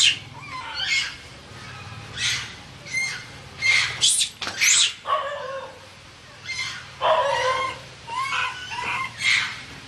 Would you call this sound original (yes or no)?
yes